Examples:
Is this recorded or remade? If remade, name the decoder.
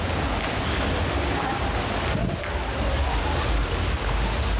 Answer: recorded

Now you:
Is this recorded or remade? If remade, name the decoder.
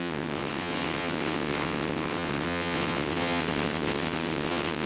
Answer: remade, vocoder, WaveNeXt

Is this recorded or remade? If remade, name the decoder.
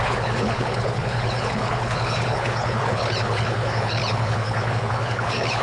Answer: remade, codec, HILCodec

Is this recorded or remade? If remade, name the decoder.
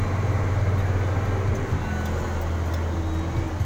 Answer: recorded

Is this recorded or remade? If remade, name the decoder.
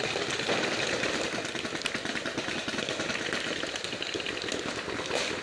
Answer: recorded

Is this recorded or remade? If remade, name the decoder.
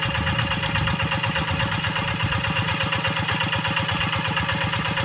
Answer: recorded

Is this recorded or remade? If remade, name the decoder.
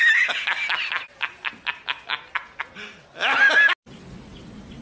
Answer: recorded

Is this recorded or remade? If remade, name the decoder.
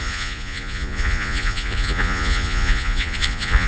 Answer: remade, vocoder, Vocos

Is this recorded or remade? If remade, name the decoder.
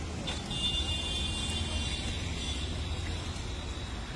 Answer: recorded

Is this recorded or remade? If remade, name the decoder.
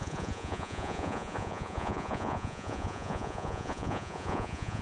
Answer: remade, vocoder, Vocos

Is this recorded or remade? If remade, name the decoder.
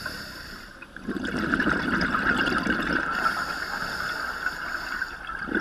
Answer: remade, vocoder, BigVGAN v2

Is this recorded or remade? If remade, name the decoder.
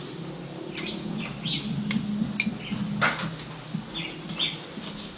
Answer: recorded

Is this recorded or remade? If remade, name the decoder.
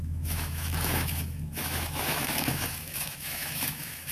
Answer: remade, autoencoder, DAC-VAE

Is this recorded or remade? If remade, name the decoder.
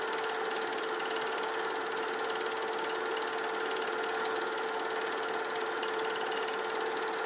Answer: recorded